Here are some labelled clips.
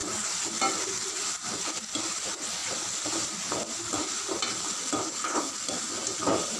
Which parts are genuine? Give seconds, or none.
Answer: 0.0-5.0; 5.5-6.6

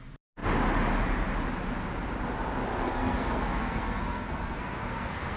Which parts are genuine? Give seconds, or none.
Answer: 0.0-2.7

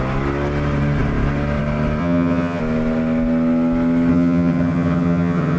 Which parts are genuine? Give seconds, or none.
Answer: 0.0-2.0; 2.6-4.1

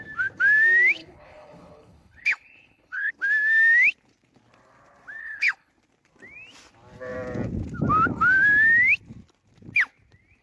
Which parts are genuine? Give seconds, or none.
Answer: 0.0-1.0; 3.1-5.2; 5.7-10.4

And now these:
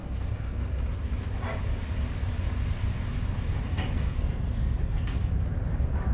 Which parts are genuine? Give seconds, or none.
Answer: 0.8-3.7; 5.3-6.1

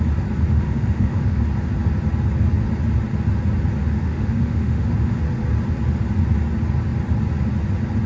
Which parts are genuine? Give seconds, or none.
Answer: 0.0-0.5; 1.4-3.8; 5.1-8.1

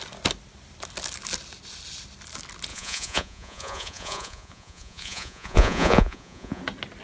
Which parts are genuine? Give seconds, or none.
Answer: 0.0-2.7; 6.6-7.0

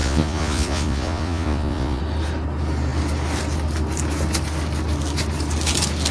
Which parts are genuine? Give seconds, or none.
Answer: 2.0-6.1